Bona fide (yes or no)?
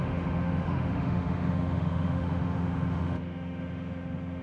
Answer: no